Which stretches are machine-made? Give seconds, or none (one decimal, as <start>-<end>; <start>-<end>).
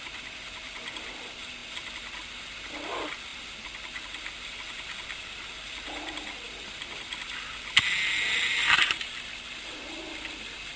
none